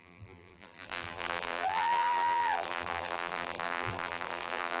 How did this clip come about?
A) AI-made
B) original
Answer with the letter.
A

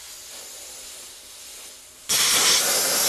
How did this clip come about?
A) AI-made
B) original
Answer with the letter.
B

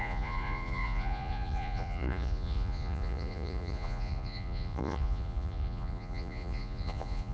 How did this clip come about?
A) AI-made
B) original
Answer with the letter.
A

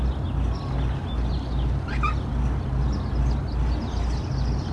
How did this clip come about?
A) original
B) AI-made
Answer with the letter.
A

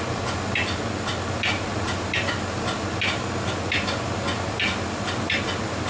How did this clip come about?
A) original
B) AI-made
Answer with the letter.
A